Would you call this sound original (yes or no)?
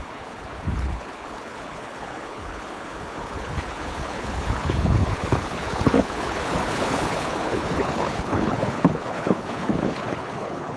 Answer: no